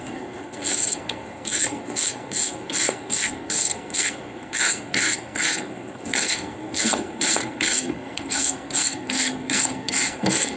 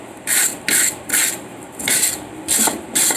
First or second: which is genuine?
second